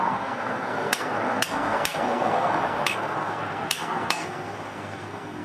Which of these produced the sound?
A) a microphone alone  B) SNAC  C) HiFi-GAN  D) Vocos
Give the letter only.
B